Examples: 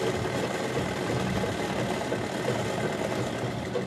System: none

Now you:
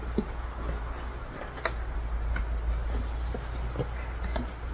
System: none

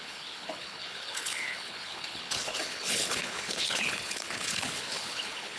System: codec, HILCodec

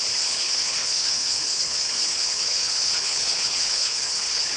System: codec, HILCodec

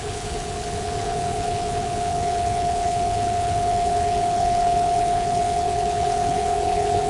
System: codec, HILCodec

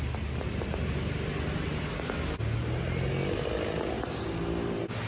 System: none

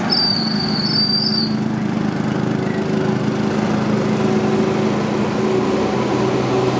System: none